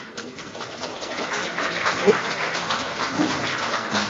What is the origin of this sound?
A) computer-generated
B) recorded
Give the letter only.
A